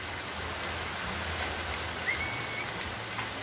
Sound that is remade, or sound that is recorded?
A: recorded